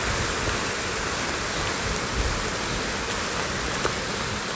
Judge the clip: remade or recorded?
recorded